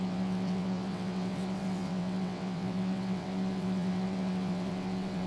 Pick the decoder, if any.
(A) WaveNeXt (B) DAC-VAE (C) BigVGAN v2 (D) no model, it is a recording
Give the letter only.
A